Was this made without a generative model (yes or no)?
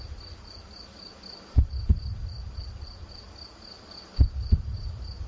yes